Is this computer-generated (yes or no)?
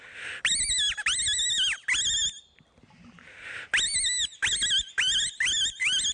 no